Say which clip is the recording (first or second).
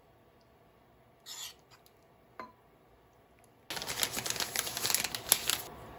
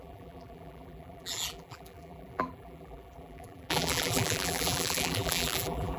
first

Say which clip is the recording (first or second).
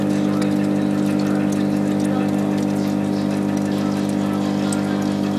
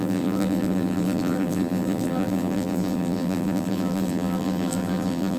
first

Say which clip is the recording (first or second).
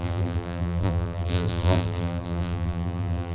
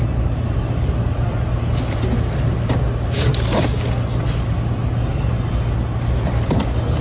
second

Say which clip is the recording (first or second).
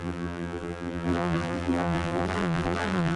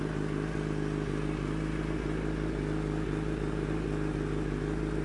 second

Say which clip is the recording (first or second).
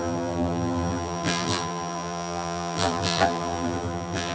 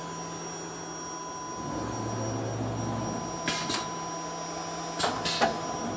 second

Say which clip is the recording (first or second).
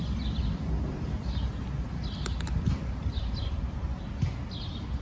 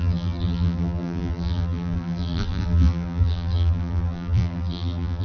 first